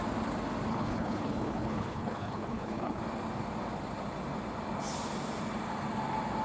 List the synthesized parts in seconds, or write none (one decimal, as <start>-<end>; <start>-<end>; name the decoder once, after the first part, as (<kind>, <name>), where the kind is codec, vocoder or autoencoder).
0.7-3.0 (codec, HILCodec)

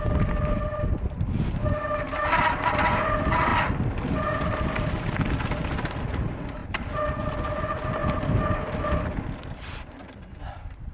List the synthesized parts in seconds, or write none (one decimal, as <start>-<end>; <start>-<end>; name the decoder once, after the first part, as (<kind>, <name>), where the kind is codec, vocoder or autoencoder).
6.6-7.1 (vocoder, BigVGAN v2)